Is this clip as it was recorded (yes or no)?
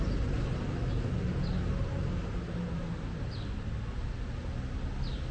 yes